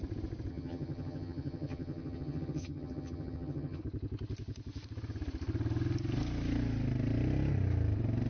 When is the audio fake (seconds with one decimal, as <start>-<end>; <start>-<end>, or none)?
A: 0.5-3.8